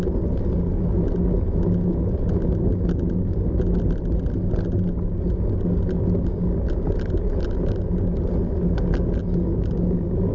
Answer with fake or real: real